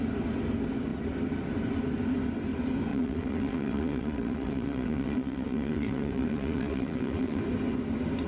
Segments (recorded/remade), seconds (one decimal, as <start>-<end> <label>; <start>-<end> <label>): 0.0-2.9 recorded; 2.9-7.4 remade; 7.4-8.3 recorded

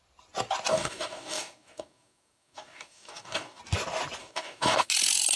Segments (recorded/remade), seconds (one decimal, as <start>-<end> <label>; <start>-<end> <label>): 0.0-0.7 recorded; 0.7-3.6 remade; 3.6-4.2 recorded; 4.2-4.9 remade; 4.9-5.4 recorded

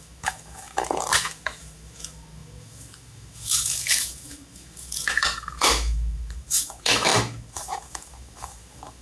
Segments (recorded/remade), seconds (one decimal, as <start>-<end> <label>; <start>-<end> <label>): 0.0-9.0 remade

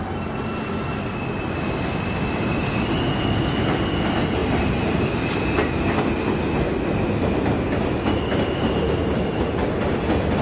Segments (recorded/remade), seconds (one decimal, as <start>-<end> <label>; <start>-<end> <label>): 0.0-10.4 recorded

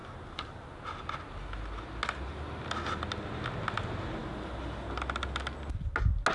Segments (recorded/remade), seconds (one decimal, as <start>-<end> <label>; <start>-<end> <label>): 0.0-6.3 recorded

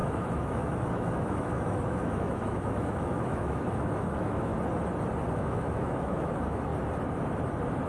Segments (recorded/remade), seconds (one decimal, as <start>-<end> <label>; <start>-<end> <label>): 0.0-4.5 remade; 4.5-5.3 recorded; 5.3-6.7 remade; 6.7-7.9 recorded

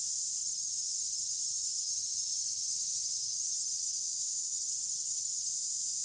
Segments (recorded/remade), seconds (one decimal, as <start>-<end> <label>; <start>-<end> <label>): 0.0-0.4 recorded; 0.4-4.0 remade; 4.0-4.5 recorded; 4.5-5.5 remade; 5.5-6.0 recorded

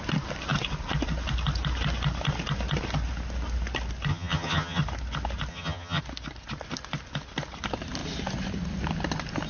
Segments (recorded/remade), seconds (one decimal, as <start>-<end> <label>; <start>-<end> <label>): 0.0-4.1 recorded; 4.1-4.8 remade; 4.8-5.5 recorded; 5.5-6.0 remade; 6.0-9.5 recorded